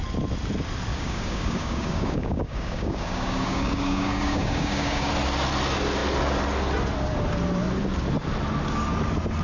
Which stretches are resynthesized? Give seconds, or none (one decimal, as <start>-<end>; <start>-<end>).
0.9-5.1